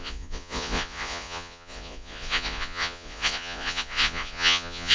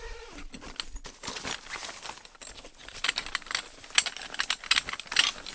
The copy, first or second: first